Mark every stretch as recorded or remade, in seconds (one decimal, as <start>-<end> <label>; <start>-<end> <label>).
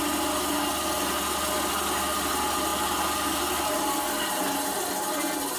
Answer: 0.0-5.6 recorded